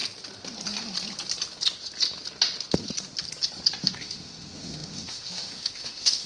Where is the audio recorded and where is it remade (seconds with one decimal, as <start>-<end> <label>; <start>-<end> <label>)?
0.0-3.8 recorded; 3.8-6.3 remade